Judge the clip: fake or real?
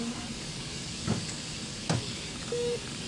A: fake